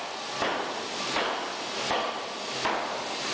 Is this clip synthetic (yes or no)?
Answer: no